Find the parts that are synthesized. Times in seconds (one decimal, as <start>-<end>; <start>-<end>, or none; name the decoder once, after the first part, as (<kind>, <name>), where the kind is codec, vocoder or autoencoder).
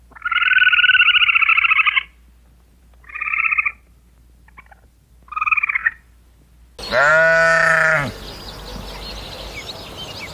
none